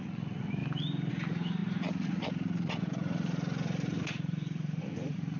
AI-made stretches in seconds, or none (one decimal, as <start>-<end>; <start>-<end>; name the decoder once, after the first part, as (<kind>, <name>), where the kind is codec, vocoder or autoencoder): 0.0-0.6 (vocoder, Vocos); 1.1-5.4